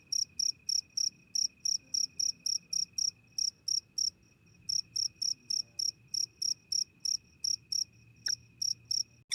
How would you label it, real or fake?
real